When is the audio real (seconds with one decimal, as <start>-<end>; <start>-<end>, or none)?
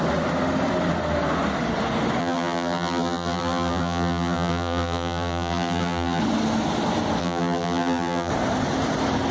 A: 0.0-2.2; 6.2-7.2; 8.3-9.3